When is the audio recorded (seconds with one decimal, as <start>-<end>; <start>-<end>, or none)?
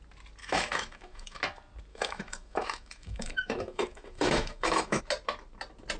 0.0-0.4; 1.4-1.9; 5.0-6.0